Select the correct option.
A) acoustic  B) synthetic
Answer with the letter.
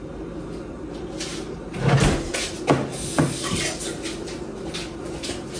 A